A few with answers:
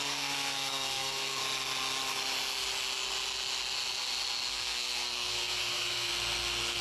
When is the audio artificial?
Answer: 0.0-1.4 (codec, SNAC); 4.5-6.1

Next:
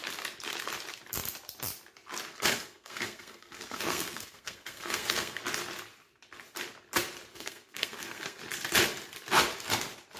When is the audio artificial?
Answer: 2.3-5.4 (codec, SNAC); 7.3-8.4

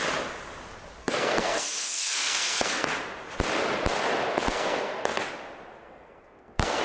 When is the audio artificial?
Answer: 1.0-2.9 (codec, SNAC); 4.3-5.2; 5.8-6.8

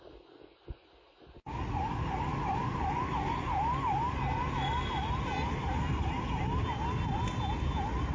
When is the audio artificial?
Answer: none

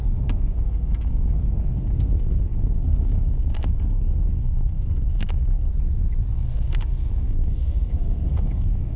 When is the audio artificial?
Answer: 0.0-5.7 (codec, SNAC); 6.3-9.0

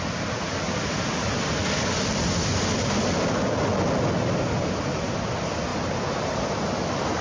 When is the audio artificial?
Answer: none

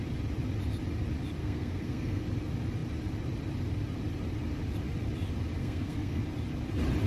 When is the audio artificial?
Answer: 1.4-2.2 (codec, SNAC); 5.6-6.2